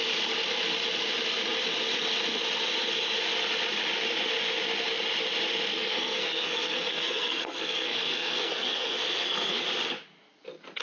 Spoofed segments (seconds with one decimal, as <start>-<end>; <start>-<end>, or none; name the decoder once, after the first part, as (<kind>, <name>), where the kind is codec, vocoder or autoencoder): 5.7-9.6 (codec, SNAC)